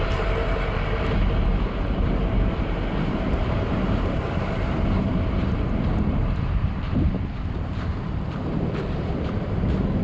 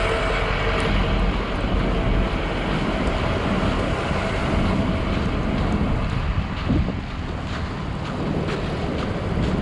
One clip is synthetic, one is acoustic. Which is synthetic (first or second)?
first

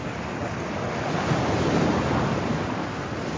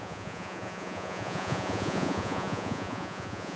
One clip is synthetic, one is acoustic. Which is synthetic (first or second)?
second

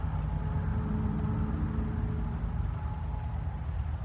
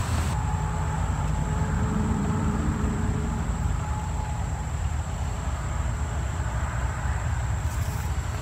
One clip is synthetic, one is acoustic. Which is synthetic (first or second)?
second